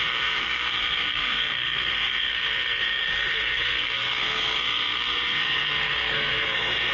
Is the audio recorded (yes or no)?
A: no